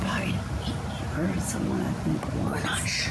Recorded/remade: recorded